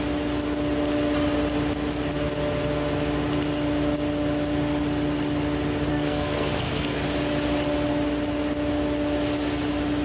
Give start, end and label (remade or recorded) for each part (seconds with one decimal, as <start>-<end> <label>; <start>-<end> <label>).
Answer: 0.0-5.9 recorded; 5.9-7.0 remade; 7.0-10.0 recorded